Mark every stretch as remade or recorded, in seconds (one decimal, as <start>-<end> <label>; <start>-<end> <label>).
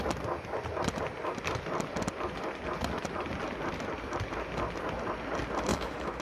0.0-5.7 recorded; 5.7-6.2 remade